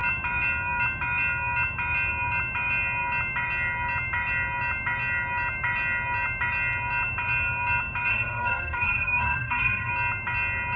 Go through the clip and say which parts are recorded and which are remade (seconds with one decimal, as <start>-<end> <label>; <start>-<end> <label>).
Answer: 0.0-8.1 recorded; 8.1-9.9 remade; 9.9-10.8 recorded